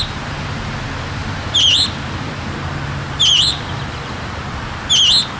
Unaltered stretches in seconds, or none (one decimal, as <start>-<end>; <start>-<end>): 0.0-1.2; 2.3-3.3; 4.4-5.4